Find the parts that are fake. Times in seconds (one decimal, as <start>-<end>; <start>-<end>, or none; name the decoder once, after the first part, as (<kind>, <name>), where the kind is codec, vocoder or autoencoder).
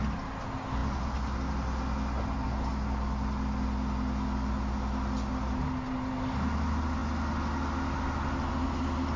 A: none